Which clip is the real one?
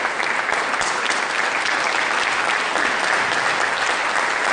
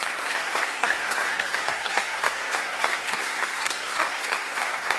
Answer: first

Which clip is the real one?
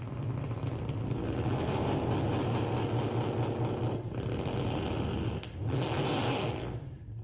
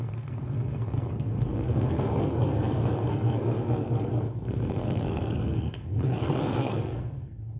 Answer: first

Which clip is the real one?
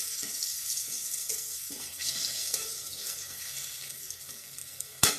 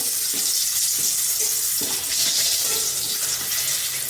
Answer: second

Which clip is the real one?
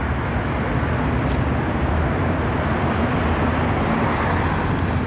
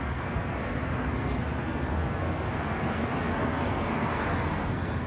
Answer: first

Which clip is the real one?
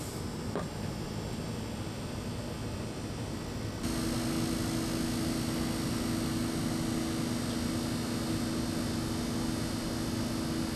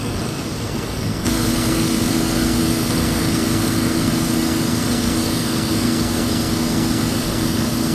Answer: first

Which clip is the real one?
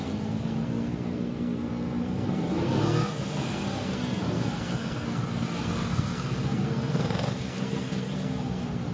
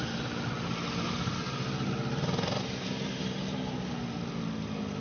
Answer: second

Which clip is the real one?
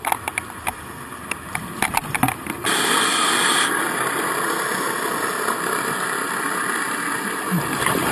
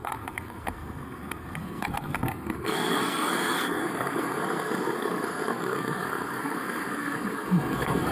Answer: first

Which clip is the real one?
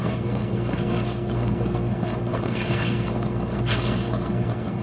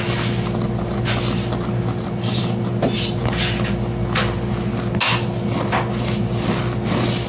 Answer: second